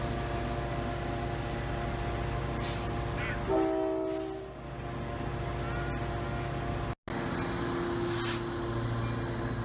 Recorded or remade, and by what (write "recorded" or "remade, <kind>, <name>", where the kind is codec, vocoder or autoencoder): recorded